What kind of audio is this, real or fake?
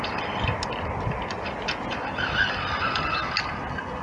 real